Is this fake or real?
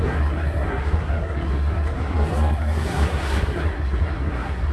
fake